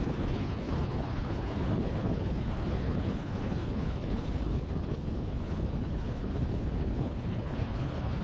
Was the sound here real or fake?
fake